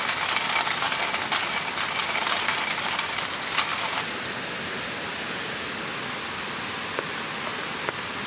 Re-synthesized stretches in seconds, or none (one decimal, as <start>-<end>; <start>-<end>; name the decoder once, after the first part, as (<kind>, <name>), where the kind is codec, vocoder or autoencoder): none